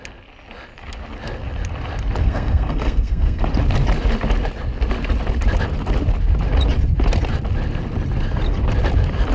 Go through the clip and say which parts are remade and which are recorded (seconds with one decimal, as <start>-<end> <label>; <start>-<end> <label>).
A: 0.0-2.2 recorded; 2.2-3.4 remade; 3.4-9.3 recorded